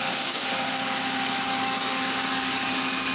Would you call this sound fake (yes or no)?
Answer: yes